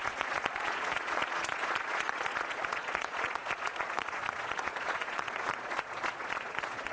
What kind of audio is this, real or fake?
fake